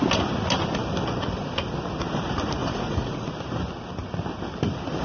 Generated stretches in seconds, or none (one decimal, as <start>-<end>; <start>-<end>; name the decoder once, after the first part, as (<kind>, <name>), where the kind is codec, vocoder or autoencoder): 2.6-3.3 (vocoder, Vocos)